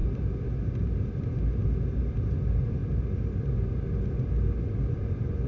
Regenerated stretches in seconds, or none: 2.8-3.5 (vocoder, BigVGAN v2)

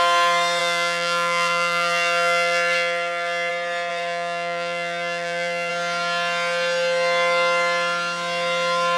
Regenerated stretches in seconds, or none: 0.6-3.5 (vocoder, BigVGAN v2); 3.9-5.7

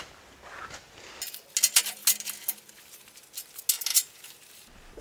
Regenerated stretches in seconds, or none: 3.9-5.0 (vocoder, BigVGAN v2)

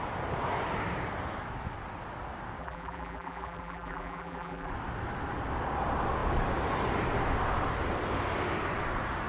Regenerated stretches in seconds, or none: 2.6-4.7 (vocoder, BigVGAN v2)

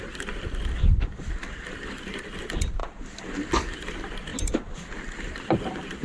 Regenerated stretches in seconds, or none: 0.0-2.8 (vocoder, BigVGAN v2); 3.8-4.3; 4.9-6.0

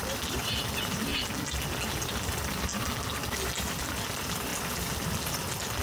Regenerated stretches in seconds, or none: 0.0-1.1 (vocoder, BigVGAN v2); 1.9-2.7; 3.8-5.8

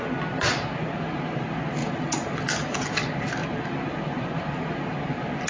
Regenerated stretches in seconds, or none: 1.8-2.5 (vocoder, BigVGAN v2); 3.4-4.7